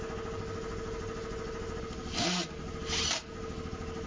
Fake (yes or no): no